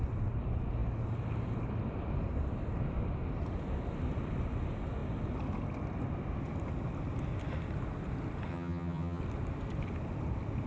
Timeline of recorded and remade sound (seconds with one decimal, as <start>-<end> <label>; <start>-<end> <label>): 0.0-8.5 recorded; 8.5-9.2 remade; 9.2-10.7 recorded